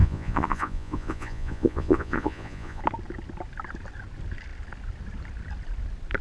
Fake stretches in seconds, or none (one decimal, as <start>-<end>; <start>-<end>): 0.0-2.8